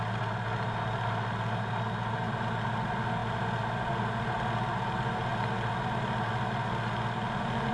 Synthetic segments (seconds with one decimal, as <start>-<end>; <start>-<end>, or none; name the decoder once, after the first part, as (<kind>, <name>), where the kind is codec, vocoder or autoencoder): none